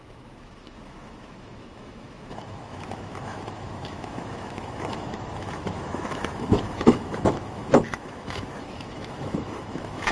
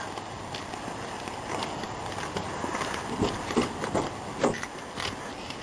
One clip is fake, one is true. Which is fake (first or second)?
first